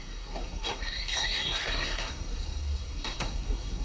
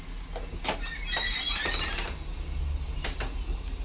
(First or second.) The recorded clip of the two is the second